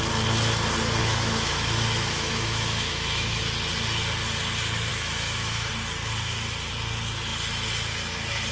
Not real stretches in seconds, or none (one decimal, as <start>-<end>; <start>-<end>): 1.0-3.4; 4.9-5.7